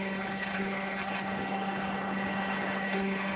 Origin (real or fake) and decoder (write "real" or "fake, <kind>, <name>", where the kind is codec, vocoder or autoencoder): fake, codec, HILCodec